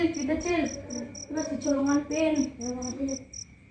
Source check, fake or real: fake